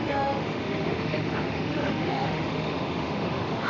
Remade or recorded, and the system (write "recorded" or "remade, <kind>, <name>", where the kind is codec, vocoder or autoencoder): remade, autoencoder, DAC-VAE